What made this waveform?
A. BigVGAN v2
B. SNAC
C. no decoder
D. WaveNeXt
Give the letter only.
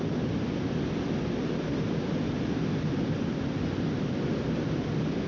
C